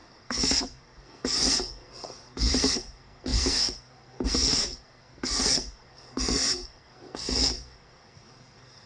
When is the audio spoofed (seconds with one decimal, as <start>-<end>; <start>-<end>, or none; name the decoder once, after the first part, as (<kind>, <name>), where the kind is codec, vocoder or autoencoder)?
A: 0.0-8.9 (codec, SNAC)